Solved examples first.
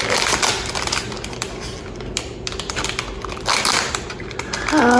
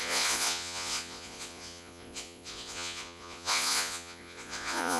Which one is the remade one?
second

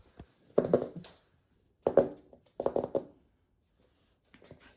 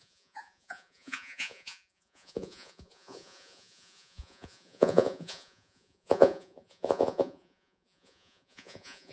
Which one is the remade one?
second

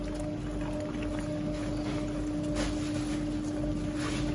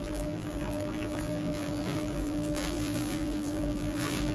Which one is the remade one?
second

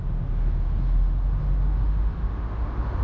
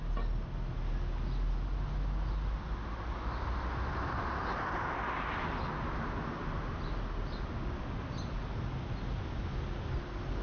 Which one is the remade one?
first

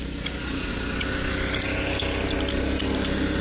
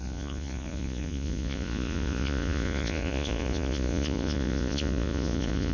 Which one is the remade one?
second